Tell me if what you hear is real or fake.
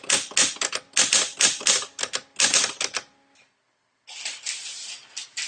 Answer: real